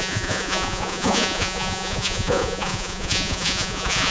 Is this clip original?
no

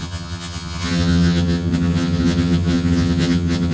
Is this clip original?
no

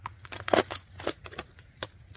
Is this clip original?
no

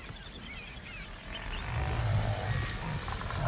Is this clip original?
yes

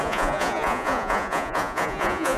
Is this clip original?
no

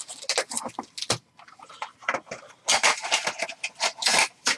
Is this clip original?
yes